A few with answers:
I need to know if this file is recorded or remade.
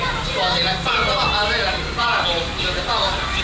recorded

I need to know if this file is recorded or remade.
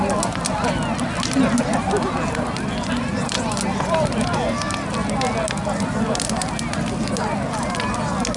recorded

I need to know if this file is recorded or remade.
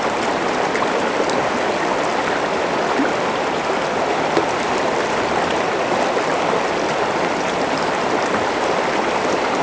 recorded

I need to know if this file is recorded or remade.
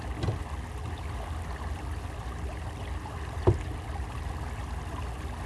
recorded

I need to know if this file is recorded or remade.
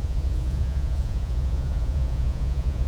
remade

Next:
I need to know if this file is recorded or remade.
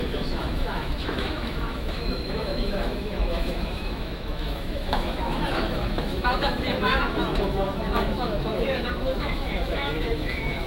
remade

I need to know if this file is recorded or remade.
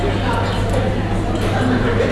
recorded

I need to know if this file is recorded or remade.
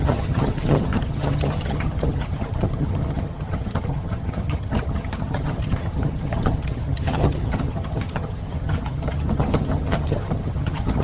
remade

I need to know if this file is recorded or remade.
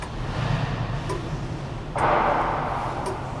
recorded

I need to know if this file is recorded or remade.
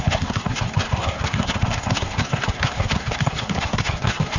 remade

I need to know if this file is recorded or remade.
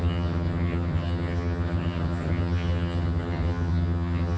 remade